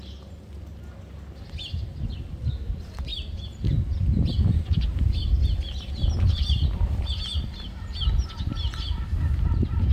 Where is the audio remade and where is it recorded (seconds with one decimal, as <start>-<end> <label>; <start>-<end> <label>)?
0.0-9.9 recorded